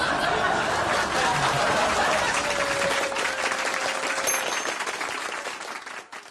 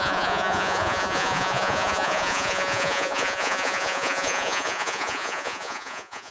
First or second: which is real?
first